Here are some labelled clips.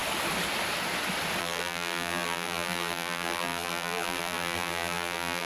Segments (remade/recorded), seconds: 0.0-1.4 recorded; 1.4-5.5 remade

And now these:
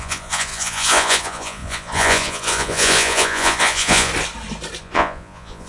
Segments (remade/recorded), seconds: 0.0-4.1 remade; 4.1-4.8 recorded; 4.8-5.7 remade